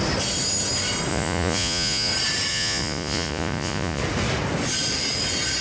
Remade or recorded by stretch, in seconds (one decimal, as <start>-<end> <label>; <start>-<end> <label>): 0.0-1.1 recorded; 1.1-2.1 remade; 2.1-2.5 recorded; 2.5-4.0 remade; 4.0-5.6 recorded